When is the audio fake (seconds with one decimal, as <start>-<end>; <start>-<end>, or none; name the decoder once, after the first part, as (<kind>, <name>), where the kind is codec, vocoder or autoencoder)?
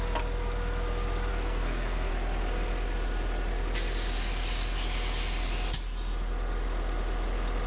1.3-2.1 (codec, SNAC)